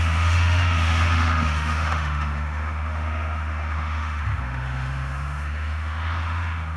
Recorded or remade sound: remade